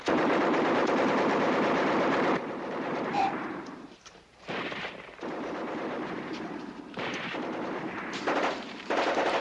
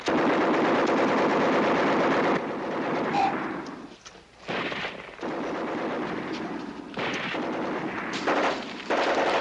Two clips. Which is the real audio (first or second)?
second